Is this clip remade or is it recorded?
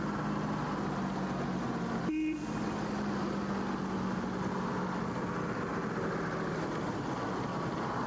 recorded